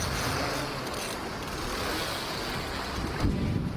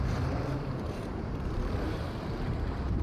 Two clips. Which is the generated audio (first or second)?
second